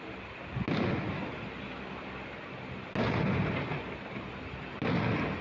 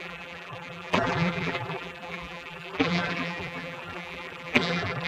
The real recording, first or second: first